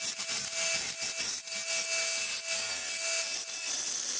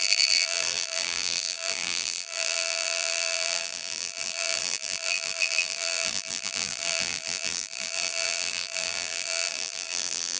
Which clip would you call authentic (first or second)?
first